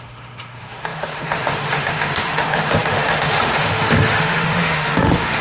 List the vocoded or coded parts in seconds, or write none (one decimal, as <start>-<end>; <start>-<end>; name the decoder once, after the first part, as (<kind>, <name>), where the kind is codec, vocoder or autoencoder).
0.0-5.4 (autoencoder, DAC-VAE)